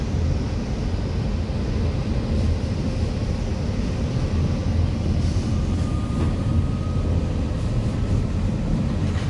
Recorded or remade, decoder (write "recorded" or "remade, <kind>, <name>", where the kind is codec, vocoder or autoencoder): recorded